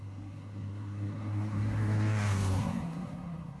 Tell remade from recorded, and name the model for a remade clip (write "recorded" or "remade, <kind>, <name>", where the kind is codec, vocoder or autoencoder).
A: remade, codec, SNAC